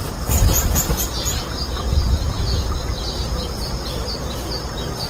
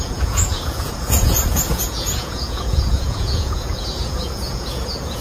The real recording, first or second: first